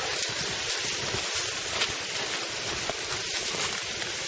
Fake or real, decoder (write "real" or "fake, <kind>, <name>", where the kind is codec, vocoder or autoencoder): real